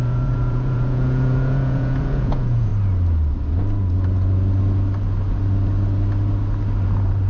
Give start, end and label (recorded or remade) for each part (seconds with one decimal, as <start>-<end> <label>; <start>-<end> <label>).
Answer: 0.0-2.7 remade; 2.7-7.3 recorded